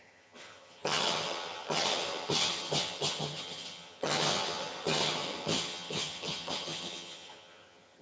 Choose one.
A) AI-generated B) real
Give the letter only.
A